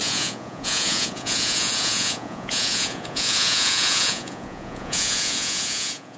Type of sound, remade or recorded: remade